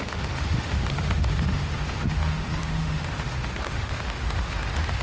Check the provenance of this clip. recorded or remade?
remade